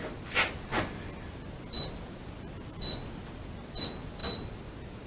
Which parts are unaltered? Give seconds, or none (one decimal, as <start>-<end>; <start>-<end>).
0.0-5.1